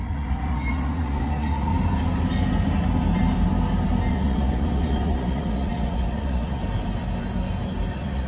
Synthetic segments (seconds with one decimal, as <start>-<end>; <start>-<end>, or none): 0.0-1.7; 4.1-6.6; 7.9-8.3

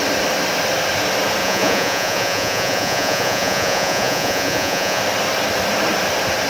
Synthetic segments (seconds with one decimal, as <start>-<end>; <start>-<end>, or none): 1.4-5.0

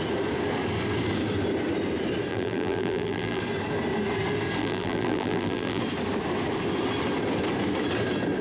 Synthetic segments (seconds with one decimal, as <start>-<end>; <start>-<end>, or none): 2.3-3.4; 4.6-5.8